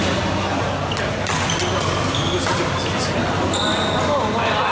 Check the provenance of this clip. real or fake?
real